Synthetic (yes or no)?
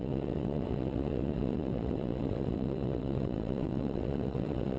yes